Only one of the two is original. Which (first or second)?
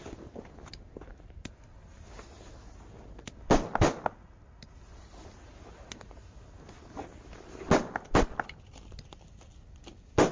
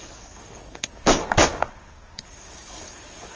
first